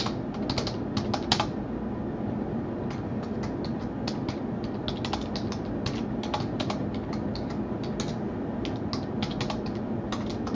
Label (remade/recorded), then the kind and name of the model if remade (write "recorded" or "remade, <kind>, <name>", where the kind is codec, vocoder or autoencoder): recorded